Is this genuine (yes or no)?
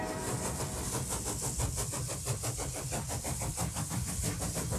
yes